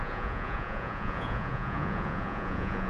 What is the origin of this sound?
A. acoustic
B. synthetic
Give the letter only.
B